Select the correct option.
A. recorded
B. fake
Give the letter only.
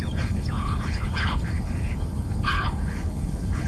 B